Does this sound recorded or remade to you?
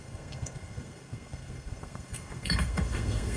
remade